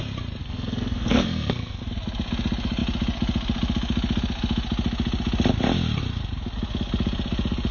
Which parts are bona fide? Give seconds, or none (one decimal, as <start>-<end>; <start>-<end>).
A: 0.0-0.4; 1.8-7.7